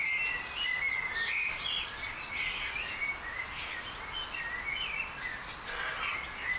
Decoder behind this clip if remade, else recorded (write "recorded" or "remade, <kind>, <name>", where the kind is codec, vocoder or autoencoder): recorded